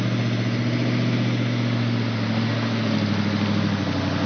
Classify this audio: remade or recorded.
recorded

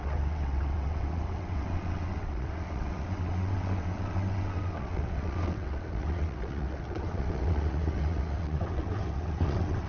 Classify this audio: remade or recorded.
remade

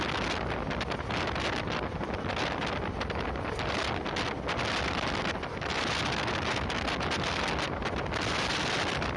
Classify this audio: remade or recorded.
recorded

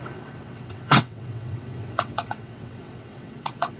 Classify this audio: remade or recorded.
remade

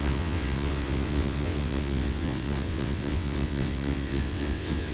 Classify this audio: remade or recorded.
remade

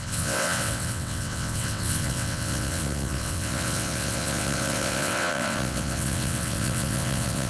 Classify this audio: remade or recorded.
remade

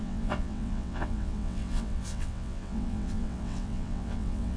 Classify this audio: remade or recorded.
remade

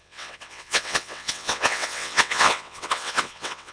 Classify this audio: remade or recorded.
remade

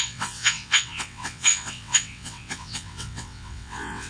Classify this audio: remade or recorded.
remade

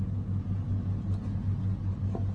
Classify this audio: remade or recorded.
recorded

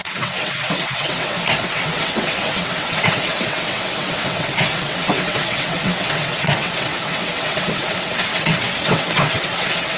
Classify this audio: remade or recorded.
remade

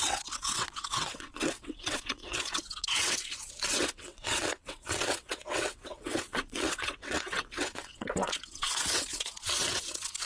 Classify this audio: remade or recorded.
remade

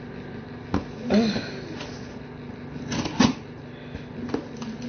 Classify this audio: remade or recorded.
recorded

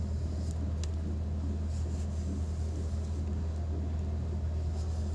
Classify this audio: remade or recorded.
recorded